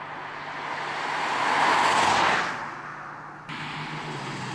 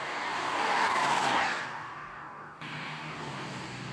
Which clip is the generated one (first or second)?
second